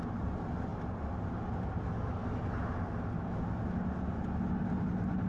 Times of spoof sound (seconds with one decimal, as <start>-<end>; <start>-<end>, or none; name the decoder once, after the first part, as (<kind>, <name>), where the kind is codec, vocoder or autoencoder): none